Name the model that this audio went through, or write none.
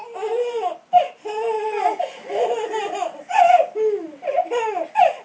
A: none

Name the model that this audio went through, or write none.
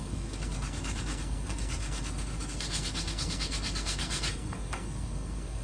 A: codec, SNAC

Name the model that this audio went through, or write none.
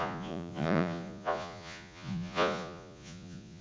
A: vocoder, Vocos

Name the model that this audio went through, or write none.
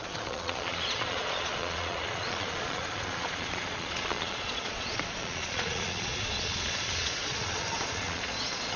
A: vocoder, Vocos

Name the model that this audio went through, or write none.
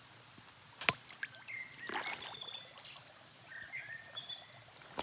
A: none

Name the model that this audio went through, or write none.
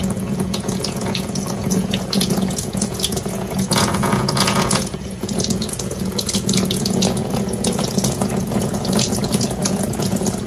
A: vocoder, Vocos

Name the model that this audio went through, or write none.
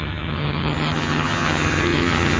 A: vocoder, HiFi-GAN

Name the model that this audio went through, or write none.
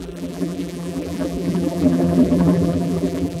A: vocoder, BigVGAN v2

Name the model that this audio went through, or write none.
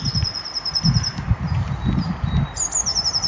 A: none